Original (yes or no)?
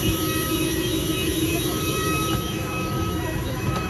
no